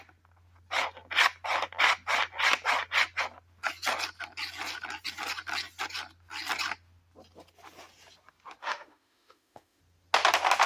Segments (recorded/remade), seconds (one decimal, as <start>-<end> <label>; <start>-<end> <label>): 0.0-8.6 recorded; 8.6-9.8 remade; 9.8-10.7 recorded